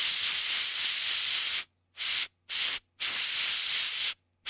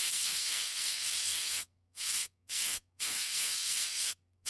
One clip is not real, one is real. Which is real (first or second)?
first